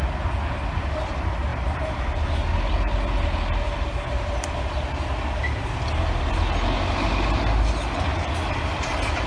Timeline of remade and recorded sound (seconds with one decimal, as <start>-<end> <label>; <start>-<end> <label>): 0.0-9.3 recorded